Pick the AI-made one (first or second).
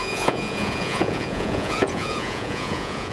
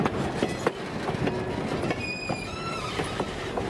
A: first